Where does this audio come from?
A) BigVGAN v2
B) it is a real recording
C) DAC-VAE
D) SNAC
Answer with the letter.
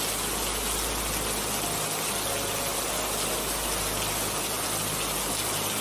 B